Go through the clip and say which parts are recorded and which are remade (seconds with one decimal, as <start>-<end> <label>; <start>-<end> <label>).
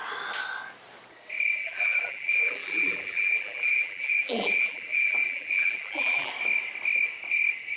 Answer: 0.0-1.6 recorded; 1.6-6.3 remade; 6.3-7.8 recorded